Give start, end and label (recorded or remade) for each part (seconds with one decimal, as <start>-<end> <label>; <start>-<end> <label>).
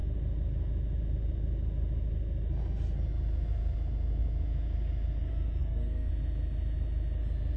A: 0.0-5.6 recorded; 5.6-6.1 remade; 6.1-7.6 recorded